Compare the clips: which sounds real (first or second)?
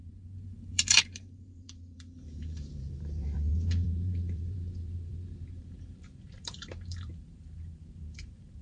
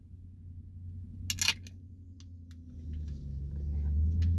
second